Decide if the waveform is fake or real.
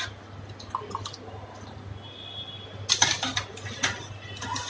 real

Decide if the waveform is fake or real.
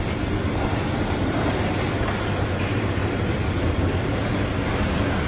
fake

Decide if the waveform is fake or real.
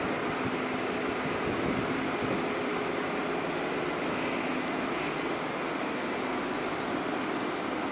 real